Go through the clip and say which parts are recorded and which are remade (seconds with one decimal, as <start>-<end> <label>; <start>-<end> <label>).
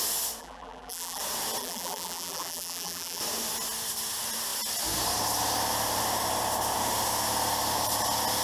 0.0-0.4 recorded; 0.4-1.2 remade; 1.2-1.6 recorded; 1.6-3.2 remade; 3.2-8.4 recorded